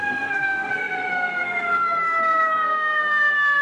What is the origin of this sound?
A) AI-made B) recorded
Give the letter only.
A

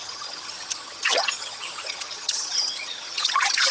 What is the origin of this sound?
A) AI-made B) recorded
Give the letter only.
A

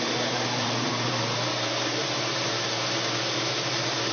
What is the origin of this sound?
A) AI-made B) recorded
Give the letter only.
A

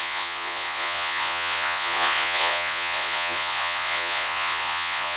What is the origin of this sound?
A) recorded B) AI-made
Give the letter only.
B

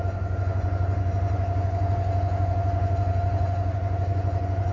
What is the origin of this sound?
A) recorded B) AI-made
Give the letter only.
B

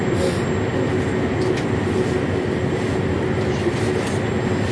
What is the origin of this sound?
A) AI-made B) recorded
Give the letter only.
B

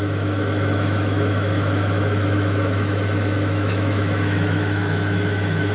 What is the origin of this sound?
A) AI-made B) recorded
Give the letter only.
A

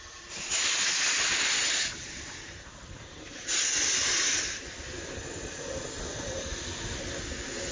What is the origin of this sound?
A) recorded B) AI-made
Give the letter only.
A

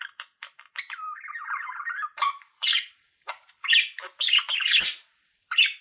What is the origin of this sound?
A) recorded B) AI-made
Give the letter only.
B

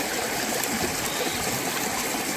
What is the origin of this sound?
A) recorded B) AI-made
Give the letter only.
A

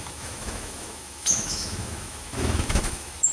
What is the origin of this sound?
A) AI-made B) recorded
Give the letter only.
A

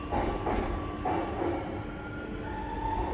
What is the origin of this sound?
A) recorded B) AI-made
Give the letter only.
A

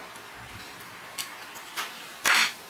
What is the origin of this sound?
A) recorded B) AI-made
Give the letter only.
A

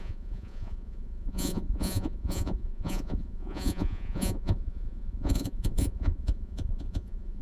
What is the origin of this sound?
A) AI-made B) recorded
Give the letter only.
A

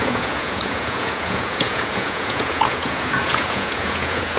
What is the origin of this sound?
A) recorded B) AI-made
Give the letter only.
B